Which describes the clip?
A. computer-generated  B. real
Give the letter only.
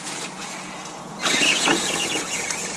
A